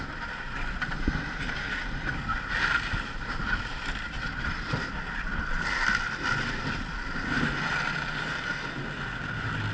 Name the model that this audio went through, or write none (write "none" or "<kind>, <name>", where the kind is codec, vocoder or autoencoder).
none